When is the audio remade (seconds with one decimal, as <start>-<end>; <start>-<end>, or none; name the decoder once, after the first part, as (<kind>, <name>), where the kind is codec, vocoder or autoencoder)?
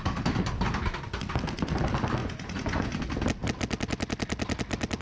2.2-3.0 (vocoder, Vocos)